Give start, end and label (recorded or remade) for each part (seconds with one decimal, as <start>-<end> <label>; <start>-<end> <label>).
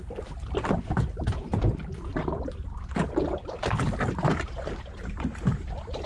0.0-6.1 recorded